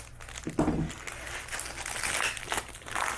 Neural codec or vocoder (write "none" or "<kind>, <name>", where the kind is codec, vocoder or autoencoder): none